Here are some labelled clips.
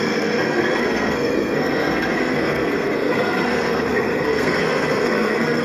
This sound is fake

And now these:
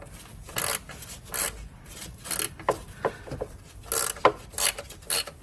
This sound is real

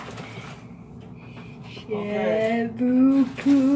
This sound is real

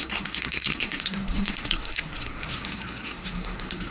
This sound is fake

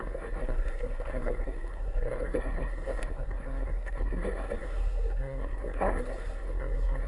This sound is fake